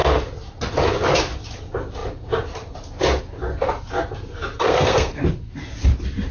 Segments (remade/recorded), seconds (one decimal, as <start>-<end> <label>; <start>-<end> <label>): 0.0-4.6 recorded; 4.6-5.2 remade; 5.2-6.3 recorded

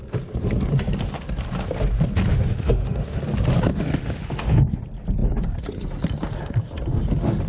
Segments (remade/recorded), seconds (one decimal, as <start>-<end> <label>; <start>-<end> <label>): 0.0-2.3 recorded; 2.3-3.2 remade; 3.2-3.7 recorded; 3.7-4.8 remade; 4.8-7.5 recorded

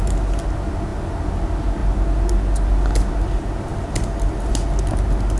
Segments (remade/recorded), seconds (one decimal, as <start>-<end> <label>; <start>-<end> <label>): 0.0-5.4 recorded

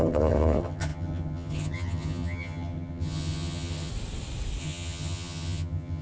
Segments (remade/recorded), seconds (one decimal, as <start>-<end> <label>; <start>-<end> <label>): 0.0-3.9 remade; 3.9-4.6 recorded; 4.6-6.0 remade